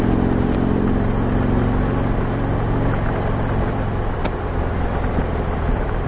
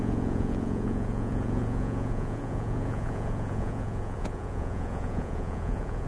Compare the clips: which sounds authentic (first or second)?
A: first